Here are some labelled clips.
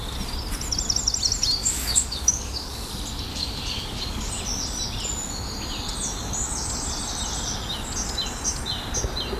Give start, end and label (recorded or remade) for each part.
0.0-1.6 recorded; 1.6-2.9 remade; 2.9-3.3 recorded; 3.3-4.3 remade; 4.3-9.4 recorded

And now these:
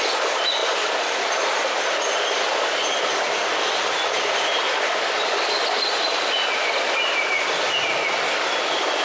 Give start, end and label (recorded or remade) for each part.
0.0-9.0 recorded

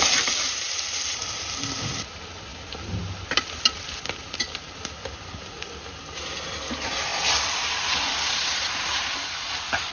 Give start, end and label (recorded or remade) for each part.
0.0-9.9 recorded

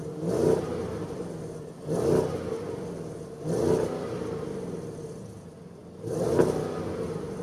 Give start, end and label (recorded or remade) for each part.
0.0-7.4 recorded

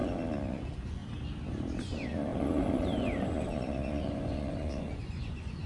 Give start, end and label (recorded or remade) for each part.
0.0-0.5 recorded; 0.5-1.0 remade; 1.0-1.8 recorded; 1.8-5.7 remade